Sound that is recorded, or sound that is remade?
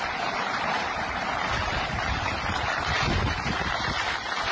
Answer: remade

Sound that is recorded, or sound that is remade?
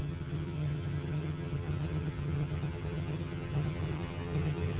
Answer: remade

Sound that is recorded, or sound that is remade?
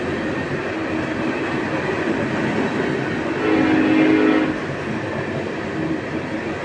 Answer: recorded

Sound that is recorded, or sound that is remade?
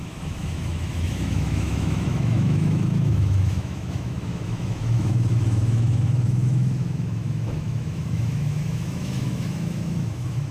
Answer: remade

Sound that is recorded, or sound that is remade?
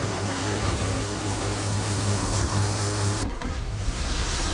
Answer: remade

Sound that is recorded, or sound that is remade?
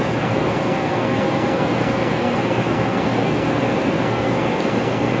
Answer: remade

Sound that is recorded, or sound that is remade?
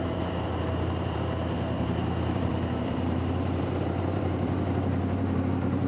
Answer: remade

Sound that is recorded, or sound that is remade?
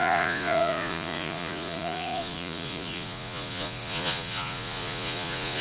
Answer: remade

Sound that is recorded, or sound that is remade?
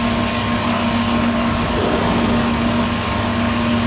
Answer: remade